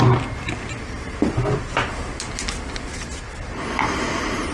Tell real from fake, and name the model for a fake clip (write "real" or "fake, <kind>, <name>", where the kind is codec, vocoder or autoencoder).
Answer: real